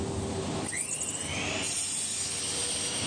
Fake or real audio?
real